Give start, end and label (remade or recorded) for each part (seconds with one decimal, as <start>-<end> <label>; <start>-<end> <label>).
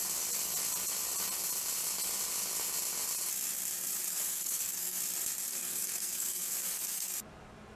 0.0-4.1 recorded; 4.1-5.0 remade; 5.0-5.5 recorded; 5.5-7.1 remade; 7.1-7.8 recorded